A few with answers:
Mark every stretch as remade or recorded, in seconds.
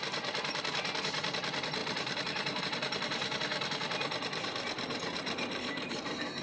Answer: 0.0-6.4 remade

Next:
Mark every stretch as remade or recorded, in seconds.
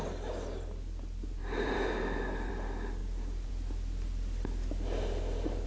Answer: 0.0-1.4 recorded; 1.4-2.5 remade; 2.5-3.0 recorded; 3.0-3.5 remade; 3.5-5.7 recorded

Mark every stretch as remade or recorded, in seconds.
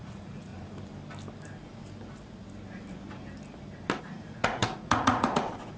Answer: 0.0-0.5 remade; 0.5-4.0 recorded; 4.0-5.8 remade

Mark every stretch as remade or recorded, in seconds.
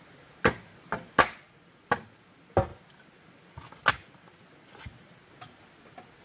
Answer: 0.0-6.2 recorded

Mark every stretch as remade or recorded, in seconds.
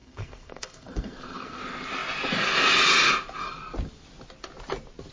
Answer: 0.0-1.6 remade; 1.6-5.1 recorded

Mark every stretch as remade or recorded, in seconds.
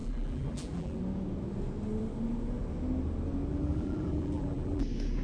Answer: 0.0-1.0 remade; 1.0-3.5 recorded; 3.5-4.8 remade; 4.8-5.2 recorded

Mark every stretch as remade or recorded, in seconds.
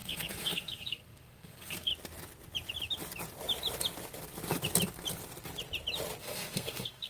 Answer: 0.0-1.9 remade; 1.9-6.2 recorded; 6.2-7.1 remade